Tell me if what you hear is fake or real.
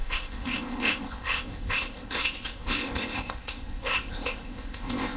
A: fake